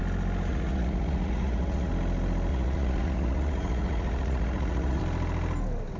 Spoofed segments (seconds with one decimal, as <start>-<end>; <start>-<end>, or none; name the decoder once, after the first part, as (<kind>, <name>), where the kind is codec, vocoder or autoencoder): 0.5-1.9 (vocoder, Vocos); 2.5-5.0